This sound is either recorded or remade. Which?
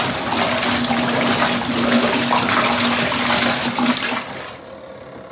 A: recorded